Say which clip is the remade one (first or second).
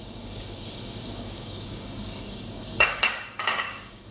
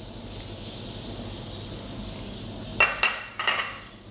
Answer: first